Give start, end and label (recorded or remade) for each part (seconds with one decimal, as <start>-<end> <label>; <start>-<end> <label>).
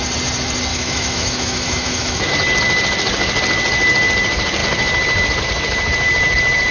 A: 0.0-0.7 recorded; 0.7-2.3 remade; 2.3-6.7 recorded